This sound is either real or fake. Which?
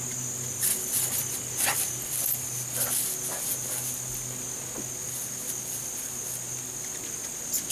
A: real